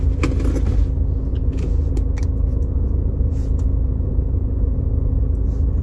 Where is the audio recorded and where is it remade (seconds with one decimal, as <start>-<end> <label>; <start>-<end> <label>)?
0.0-1.3 recorded; 1.3-1.9 remade; 1.9-2.5 recorded; 2.5-5.2 remade; 5.2-5.8 recorded